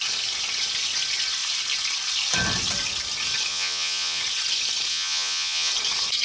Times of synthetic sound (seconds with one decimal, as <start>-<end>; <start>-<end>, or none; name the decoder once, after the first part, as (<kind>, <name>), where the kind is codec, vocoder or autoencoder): 3.5-4.2 (vocoder, Vocos); 4.9-5.7